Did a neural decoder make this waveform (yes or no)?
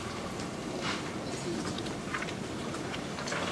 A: no